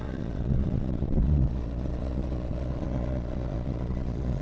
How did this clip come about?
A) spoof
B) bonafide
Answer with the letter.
A